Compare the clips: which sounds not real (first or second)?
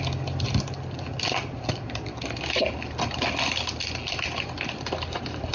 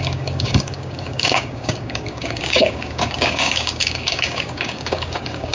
second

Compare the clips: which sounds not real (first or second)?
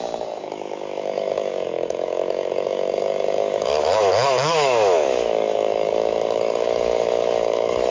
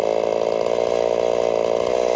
first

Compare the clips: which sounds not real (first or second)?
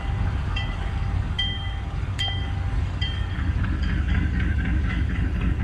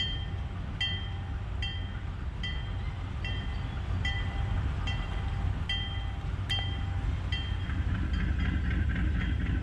first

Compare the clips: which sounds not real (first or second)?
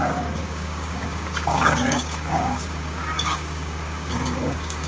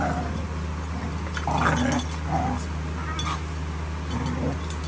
first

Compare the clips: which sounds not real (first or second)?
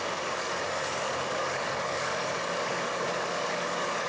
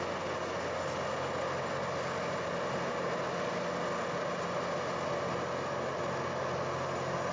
first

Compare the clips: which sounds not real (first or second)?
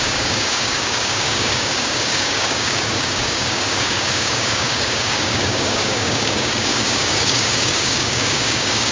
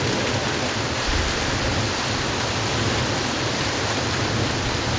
first